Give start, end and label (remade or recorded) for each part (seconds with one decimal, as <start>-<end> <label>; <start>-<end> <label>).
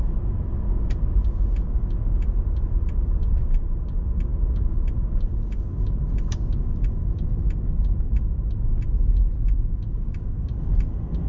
0.0-11.3 recorded